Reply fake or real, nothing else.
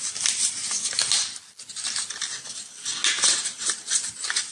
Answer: real